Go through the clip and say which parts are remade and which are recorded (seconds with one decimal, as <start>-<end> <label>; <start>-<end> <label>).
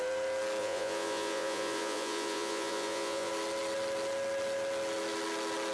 0.0-0.6 recorded; 0.6-3.3 remade; 3.3-5.7 recorded